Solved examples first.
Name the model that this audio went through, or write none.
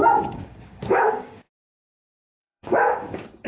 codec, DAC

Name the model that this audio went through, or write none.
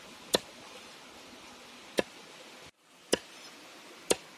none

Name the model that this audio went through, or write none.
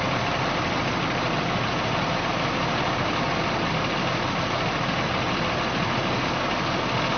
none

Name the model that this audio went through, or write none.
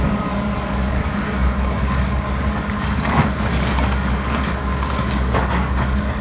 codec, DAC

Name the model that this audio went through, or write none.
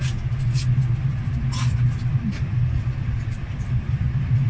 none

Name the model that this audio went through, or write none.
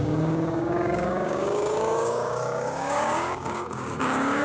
codec, DAC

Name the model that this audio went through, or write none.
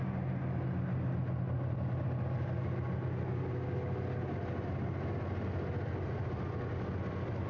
none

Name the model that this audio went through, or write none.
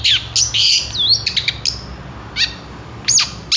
none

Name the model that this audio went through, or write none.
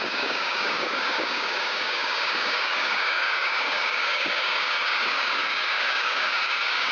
codec, DAC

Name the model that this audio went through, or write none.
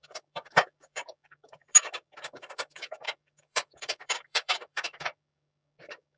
codec, DAC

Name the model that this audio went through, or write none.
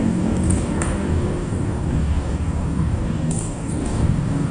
codec, DAC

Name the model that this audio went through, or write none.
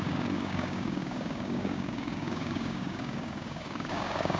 codec, DAC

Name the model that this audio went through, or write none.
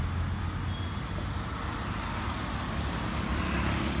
none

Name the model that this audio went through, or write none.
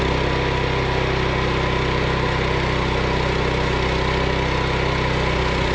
none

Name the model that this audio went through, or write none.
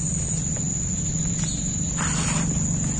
none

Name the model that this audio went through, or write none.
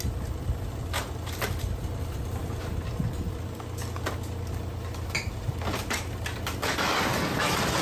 none